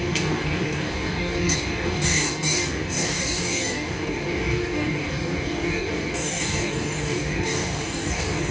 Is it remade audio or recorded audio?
remade